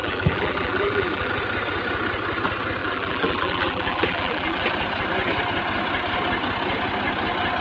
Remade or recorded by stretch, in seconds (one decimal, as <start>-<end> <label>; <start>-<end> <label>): 0.0-1.3 remade; 1.3-2.8 recorded; 2.8-4.6 remade; 4.6-7.6 recorded